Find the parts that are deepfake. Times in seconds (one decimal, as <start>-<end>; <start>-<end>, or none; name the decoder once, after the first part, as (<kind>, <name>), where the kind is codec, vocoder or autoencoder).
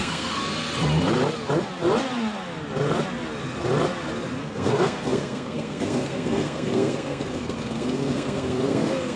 0.0-0.4 (codec, SNAC); 4.4-9.2